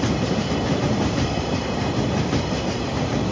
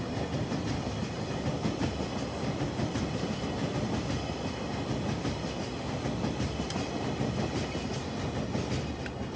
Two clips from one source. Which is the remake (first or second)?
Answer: first